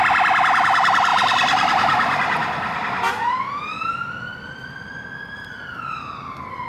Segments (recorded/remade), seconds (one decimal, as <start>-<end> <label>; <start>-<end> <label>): 0.0-1.1 recorded; 1.1-3.1 remade; 3.1-4.3 recorded; 4.3-6.0 remade; 6.0-6.7 recorded